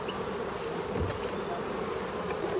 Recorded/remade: recorded